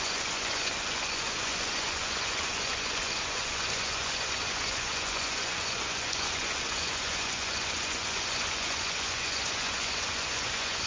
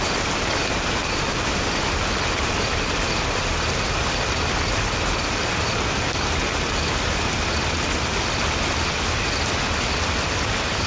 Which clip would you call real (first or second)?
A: second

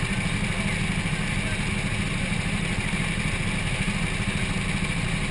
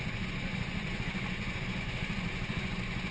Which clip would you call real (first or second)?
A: first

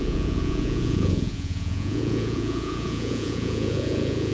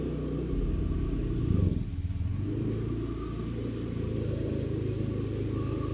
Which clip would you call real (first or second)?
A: second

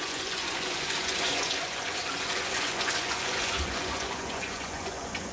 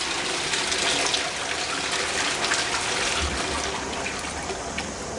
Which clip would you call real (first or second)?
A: second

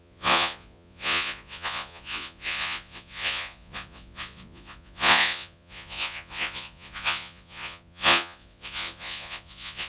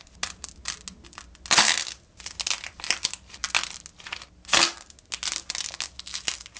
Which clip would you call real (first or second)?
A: second